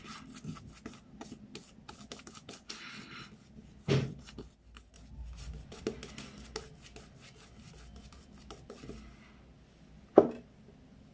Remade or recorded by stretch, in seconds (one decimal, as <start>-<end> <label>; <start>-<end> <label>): 0.0-11.1 recorded